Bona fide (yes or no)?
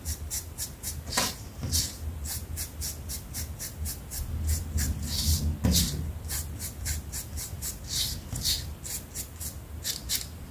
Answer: yes